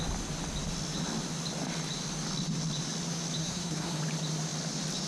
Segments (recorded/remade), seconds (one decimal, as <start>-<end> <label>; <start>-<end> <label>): 0.0-3.4 recorded; 3.4-4.0 remade; 4.0-5.1 recorded